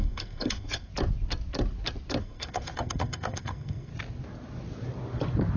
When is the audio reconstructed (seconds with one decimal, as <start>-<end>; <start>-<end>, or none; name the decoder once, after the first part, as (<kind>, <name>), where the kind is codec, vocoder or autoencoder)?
0.0-0.9 (codec, SNAC); 2.2-3.9